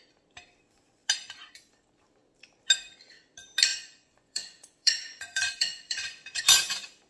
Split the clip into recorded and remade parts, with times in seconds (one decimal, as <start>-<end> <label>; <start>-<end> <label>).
0.0-3.7 recorded; 3.7-6.4 remade; 6.4-7.1 recorded